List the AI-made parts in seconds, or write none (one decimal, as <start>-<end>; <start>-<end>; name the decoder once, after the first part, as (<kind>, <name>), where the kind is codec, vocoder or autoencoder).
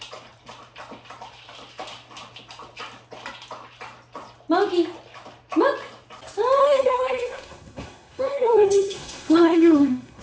6.6-10.2 (codec, SNAC)